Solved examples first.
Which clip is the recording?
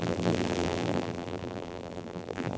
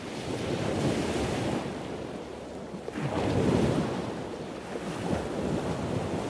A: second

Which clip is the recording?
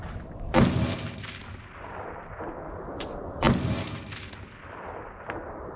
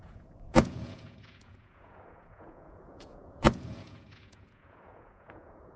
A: first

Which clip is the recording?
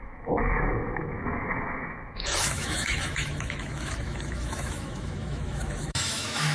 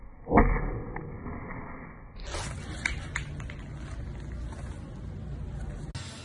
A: second